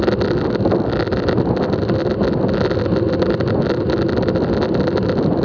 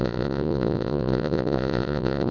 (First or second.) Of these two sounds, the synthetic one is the second